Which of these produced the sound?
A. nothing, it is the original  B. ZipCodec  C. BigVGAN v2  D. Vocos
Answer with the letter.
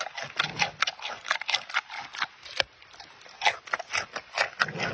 A